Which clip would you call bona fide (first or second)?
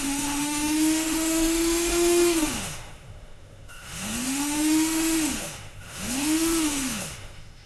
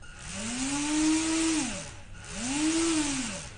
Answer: second